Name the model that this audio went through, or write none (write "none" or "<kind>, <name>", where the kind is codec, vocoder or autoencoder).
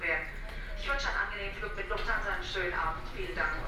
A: none